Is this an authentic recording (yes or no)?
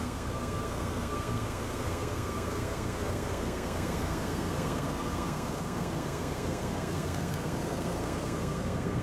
no